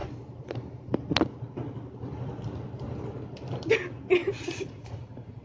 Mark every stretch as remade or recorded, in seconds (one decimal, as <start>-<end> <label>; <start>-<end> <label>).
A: 0.0-4.2 recorded; 4.2-5.4 remade